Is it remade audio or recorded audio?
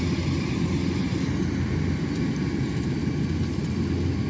recorded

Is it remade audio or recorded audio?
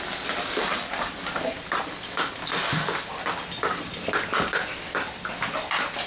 recorded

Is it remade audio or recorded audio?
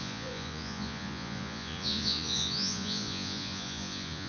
remade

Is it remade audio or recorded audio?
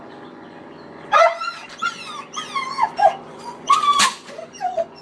remade